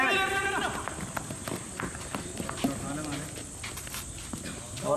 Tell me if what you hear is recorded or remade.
recorded